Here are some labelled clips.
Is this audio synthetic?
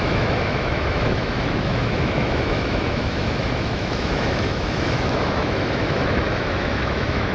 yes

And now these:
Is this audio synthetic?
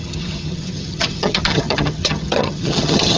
yes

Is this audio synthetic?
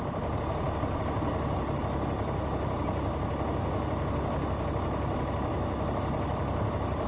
no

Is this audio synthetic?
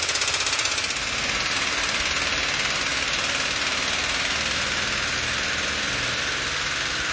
no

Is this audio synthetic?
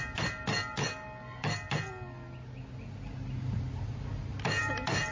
no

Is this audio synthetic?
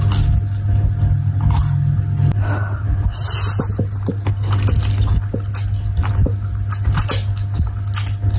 no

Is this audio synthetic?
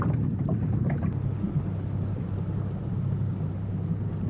no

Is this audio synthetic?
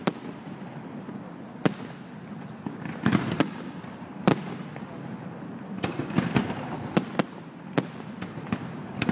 no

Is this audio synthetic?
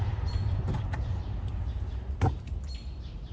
no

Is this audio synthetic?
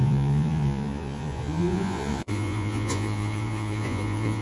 yes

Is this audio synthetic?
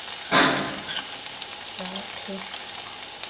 no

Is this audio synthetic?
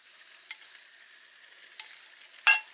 no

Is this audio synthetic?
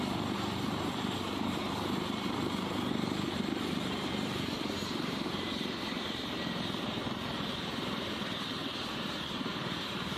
yes